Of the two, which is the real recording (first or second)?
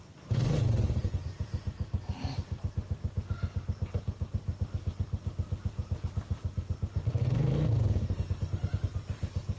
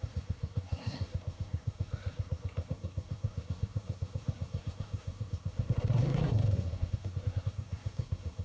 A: first